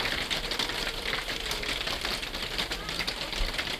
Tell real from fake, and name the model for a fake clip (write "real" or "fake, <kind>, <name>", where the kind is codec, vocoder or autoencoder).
fake, vocoder, BigVGAN v2